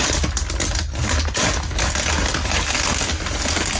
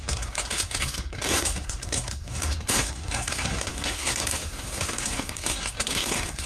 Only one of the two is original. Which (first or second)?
first